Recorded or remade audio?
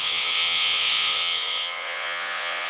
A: remade